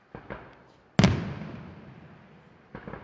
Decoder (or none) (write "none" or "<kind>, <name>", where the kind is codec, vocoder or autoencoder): none